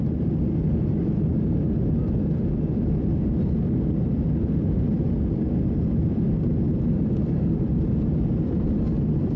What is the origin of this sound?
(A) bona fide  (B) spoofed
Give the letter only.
A